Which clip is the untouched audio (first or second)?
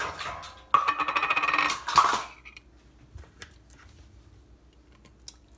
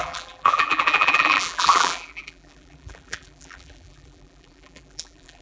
first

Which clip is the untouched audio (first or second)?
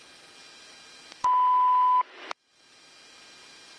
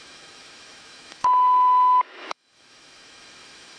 first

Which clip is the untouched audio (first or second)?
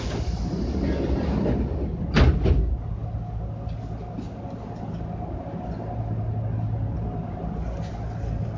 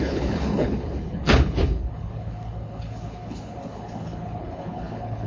first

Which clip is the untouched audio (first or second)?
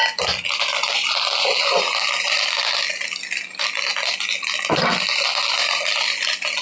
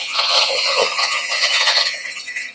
first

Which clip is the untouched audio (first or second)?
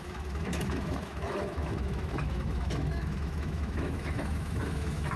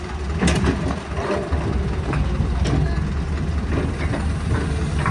second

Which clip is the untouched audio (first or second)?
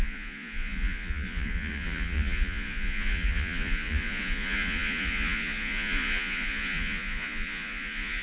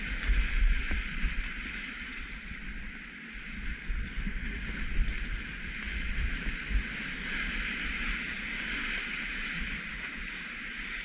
second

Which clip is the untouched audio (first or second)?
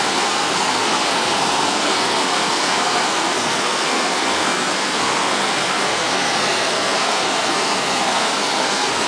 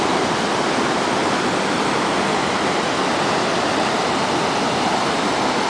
second